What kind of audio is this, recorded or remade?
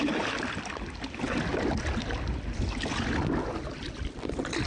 recorded